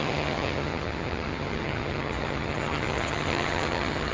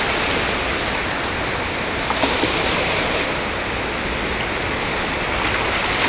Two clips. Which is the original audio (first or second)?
second